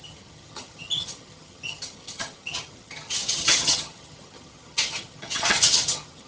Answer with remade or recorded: remade